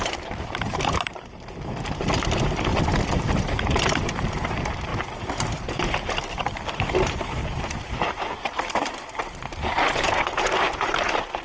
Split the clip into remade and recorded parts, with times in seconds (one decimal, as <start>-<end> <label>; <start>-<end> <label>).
0.0-2.7 remade; 2.7-3.3 recorded; 3.3-11.4 remade